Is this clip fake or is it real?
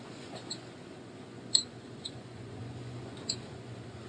fake